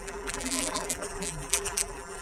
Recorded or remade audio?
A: remade